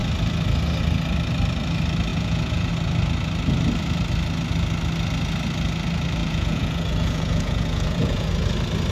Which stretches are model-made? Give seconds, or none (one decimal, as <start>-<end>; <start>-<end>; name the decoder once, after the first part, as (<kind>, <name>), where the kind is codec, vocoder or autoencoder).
2.1-2.7 (vocoder, Vocos); 6.2-8.3